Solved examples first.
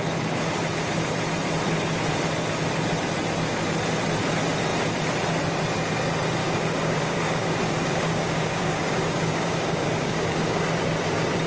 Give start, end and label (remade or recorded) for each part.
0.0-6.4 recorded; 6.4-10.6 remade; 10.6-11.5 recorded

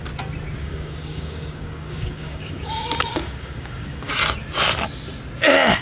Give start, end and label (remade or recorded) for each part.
0.0-0.6 recorded; 0.6-4.1 remade; 4.1-5.8 recorded

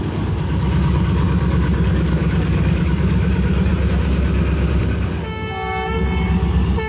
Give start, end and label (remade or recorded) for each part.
0.0-3.7 remade; 3.7-4.8 recorded; 4.8-6.9 remade

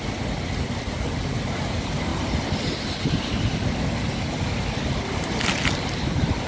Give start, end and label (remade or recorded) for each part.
0.0-6.5 recorded

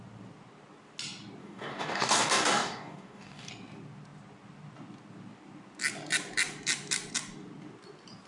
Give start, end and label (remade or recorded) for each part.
0.0-1.4 recorded; 1.4-3.5 remade; 3.5-8.3 recorded

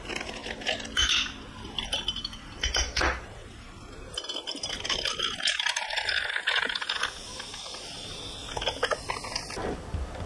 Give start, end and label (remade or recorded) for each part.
0.0-10.3 recorded

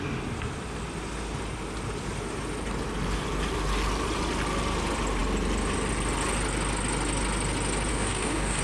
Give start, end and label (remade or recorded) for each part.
0.0-7.9 recorded; 7.9-8.6 remade